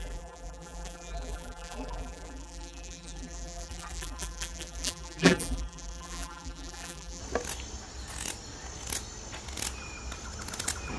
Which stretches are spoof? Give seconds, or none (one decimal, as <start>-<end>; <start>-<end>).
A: 0.0-7.2